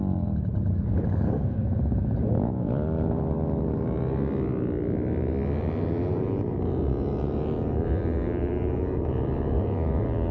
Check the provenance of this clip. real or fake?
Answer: real